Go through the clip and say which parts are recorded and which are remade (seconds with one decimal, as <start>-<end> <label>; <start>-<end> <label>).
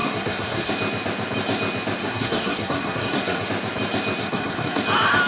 0.0-0.7 remade; 0.7-2.0 recorded; 2.0-3.5 remade; 3.5-4.2 recorded; 4.2-4.8 remade; 4.8-5.3 recorded